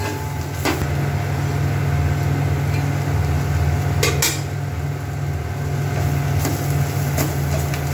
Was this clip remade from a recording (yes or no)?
no